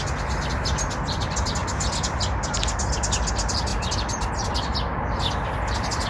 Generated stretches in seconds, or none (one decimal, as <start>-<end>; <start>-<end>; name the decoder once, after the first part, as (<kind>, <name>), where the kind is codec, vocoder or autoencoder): none